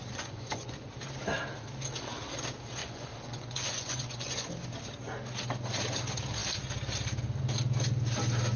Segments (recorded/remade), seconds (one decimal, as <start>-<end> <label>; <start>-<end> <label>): 0.0-0.9 remade; 0.9-2.8 recorded; 2.8-4.5 remade; 4.5-8.6 recorded